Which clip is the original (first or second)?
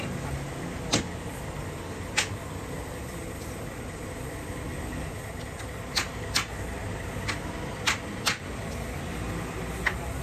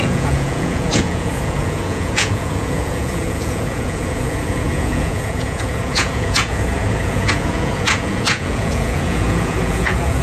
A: first